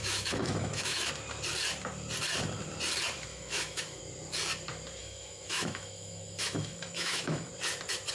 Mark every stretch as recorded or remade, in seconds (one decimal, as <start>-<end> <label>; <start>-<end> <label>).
0.0-1.1 remade; 1.1-3.3 recorded; 3.3-4.0 remade; 4.0-5.0 recorded; 5.0-7.5 remade; 7.5-8.1 recorded